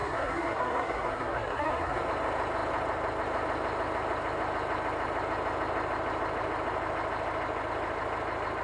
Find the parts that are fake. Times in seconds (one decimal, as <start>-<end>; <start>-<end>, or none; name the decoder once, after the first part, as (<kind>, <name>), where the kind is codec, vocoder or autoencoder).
0.0-2.0 (codec, SNAC)